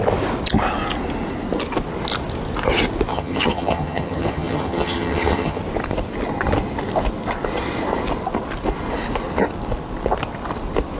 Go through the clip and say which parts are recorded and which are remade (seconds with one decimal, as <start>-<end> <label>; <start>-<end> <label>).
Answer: 0.0-3.1 recorded; 3.1-5.6 remade; 5.6-11.0 recorded